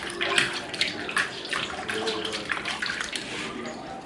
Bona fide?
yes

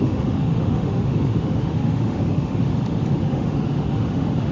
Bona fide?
no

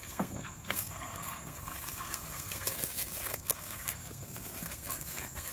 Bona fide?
no